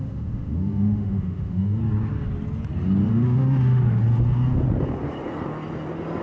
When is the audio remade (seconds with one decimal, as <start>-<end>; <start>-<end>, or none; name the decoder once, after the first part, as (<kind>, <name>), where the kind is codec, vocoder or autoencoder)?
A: 0.0-1.8 (autoencoder, DAC-VAE); 3.1-3.8